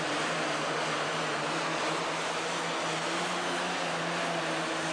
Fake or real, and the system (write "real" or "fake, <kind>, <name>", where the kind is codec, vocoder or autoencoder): real